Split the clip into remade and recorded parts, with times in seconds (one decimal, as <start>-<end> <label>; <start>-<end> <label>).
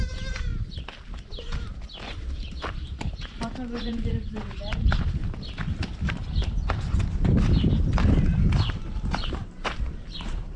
0.0-0.5 remade; 0.5-1.1 recorded; 1.1-5.2 remade; 5.2-8.8 recorded; 8.8-10.6 remade